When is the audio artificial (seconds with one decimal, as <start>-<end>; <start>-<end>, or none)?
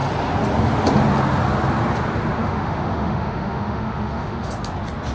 2.4-4.5